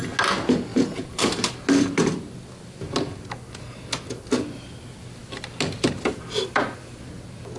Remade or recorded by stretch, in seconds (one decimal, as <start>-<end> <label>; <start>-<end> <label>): 0.0-0.7 recorded; 0.7-1.2 remade; 1.2-7.6 recorded